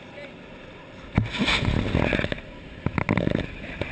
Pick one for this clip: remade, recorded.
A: recorded